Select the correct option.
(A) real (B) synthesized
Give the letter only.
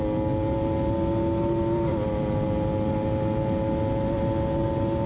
A